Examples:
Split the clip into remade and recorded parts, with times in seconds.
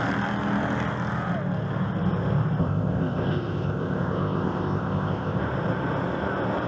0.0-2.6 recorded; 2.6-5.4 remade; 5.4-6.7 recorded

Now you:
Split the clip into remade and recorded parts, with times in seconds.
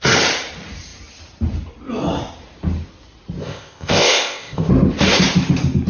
0.0-3.4 recorded; 3.4-4.7 remade; 4.7-5.9 recorded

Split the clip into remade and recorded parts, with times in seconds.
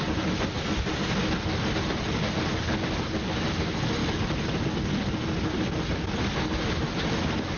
0.0-7.6 recorded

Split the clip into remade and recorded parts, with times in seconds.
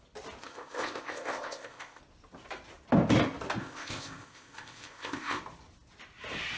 0.0-0.4 recorded; 0.4-2.0 remade; 2.0-3.6 recorded; 3.6-5.4 remade; 5.4-6.6 recorded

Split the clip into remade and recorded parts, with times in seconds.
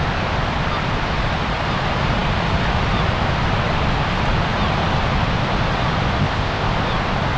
0.0-6.2 recorded; 6.2-6.7 remade; 6.7-7.4 recorded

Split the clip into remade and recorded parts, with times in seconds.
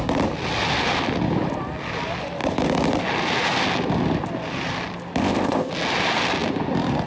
0.0-5.2 recorded; 5.2-5.7 remade; 5.7-7.1 recorded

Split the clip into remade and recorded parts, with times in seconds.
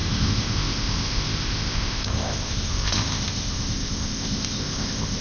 0.0-5.2 remade